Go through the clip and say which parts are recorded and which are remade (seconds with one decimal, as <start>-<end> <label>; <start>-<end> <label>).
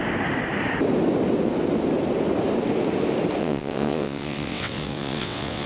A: 0.0-3.4 recorded; 3.4-5.7 remade